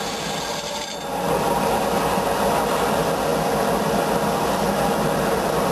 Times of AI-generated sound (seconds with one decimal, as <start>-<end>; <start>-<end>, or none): none